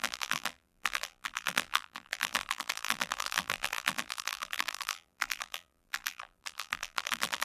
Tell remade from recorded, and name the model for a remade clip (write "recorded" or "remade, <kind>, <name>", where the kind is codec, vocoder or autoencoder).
remade, vocoder, BigVGAN v2